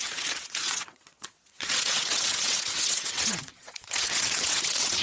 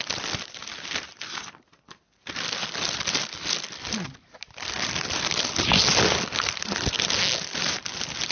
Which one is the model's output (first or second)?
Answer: first